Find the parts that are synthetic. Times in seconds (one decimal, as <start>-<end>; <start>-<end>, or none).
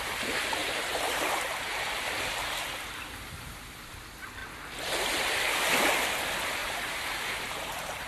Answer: 0.6-1.4; 6.6-8.1